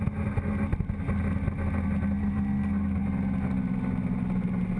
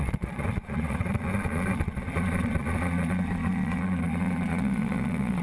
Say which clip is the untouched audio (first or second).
first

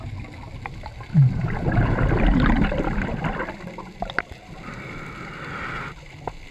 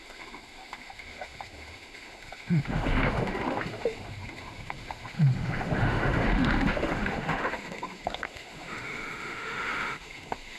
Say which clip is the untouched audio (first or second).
first